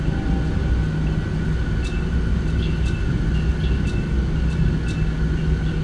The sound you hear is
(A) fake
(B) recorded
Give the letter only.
B